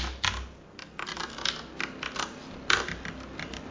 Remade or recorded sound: recorded